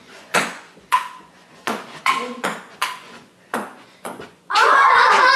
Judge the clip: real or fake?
fake